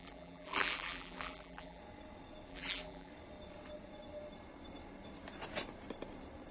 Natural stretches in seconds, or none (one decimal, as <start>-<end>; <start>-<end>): 1.8-2.5; 3.1-6.5